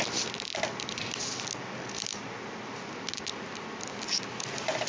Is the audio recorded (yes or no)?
yes